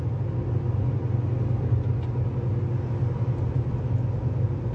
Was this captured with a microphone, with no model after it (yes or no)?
yes